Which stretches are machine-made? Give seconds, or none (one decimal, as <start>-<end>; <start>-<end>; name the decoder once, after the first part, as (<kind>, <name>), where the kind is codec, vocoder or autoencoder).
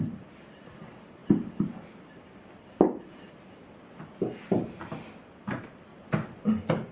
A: none